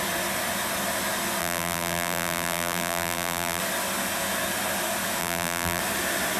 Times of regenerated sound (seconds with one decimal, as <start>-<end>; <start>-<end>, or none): 1.4-3.6; 5.2-5.8